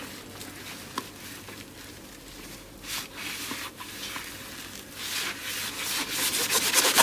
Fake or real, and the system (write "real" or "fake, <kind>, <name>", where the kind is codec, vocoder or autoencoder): real